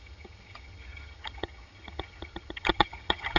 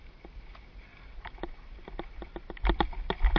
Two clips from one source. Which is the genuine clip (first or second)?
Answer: second